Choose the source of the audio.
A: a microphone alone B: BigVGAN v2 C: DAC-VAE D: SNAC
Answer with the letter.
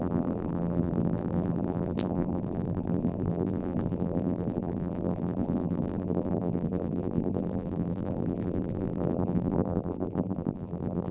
B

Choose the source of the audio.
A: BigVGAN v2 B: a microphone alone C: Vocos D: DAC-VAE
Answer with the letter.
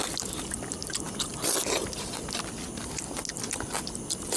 B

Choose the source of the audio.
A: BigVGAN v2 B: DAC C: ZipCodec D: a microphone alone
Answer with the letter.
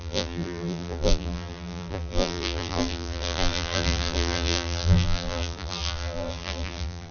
A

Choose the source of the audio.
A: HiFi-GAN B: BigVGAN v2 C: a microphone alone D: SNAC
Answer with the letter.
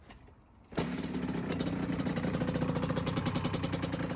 B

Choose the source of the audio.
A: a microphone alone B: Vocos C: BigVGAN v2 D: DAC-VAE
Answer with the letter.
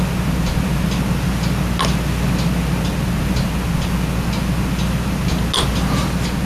A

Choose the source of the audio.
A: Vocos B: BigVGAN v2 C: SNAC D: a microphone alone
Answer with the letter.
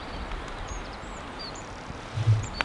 B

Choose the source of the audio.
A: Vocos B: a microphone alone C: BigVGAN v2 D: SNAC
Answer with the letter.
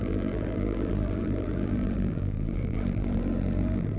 C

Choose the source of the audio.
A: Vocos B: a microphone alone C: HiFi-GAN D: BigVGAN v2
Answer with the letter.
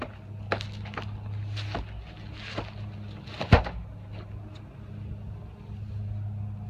B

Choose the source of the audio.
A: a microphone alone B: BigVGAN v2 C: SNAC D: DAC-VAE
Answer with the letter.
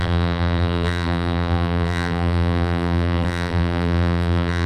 B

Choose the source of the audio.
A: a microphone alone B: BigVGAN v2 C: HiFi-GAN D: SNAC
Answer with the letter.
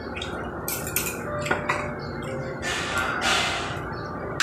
A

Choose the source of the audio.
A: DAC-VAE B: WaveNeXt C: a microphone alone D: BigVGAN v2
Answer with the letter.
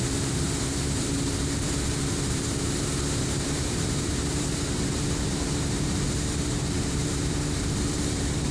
D